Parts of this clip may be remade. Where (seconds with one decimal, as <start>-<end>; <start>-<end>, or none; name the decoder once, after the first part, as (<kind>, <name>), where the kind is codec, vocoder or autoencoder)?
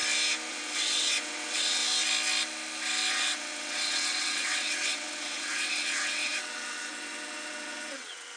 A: 0.5-1.8 (vocoder, WaveNeXt); 3.1-8.4